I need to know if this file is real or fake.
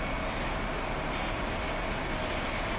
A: real